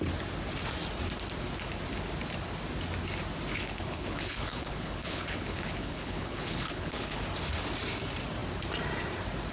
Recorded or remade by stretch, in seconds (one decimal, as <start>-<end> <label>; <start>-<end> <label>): 0.0-3.5 recorded; 3.5-7.2 remade; 7.2-9.5 recorded